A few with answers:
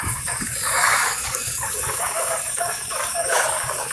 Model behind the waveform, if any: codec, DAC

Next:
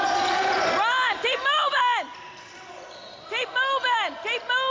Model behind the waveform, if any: none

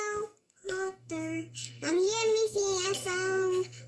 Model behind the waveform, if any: codec, SNAC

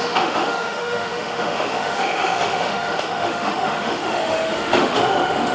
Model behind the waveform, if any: autoencoder, DAC-VAE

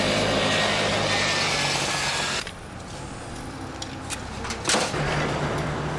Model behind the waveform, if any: none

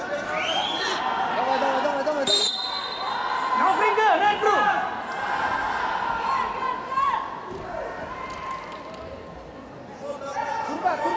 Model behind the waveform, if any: none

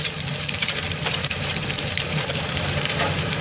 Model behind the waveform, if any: vocoder, BigVGAN v2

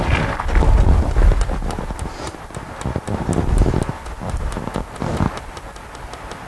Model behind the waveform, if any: none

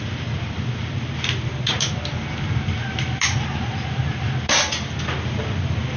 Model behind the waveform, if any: none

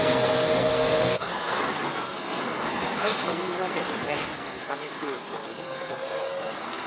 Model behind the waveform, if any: codec, SNAC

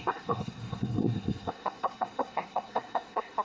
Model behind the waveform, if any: codec, SNAC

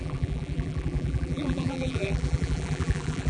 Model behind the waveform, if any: vocoder, BigVGAN v2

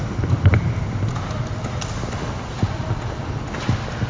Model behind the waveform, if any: none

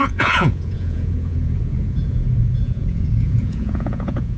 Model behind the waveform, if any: vocoder, Vocos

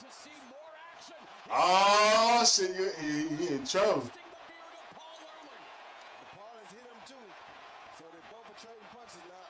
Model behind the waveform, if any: vocoder, Vocos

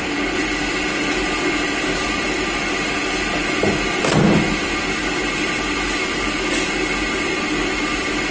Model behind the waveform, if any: none